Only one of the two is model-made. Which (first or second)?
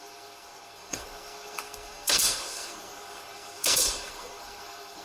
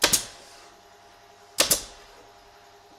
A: first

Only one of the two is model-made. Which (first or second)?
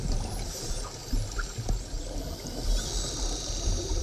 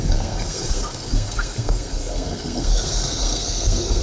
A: second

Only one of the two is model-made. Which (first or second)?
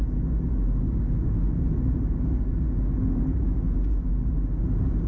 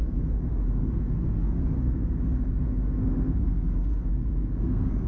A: second